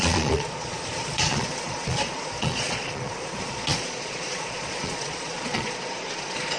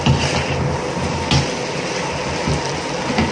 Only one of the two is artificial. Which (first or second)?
first